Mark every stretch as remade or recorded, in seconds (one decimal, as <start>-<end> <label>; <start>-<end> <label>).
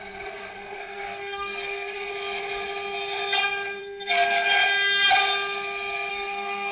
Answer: 0.0-2.1 remade; 2.1-3.8 recorded; 3.8-4.6 remade; 4.6-6.1 recorded; 6.1-6.7 remade